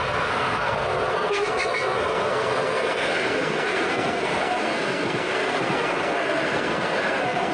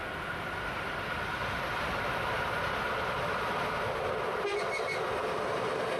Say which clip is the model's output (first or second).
first